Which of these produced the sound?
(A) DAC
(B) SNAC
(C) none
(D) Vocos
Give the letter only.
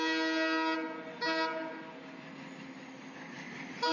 C